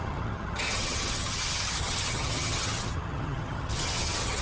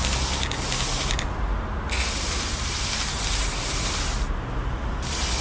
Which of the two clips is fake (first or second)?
first